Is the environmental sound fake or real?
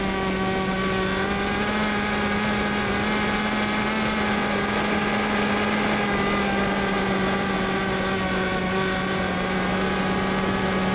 real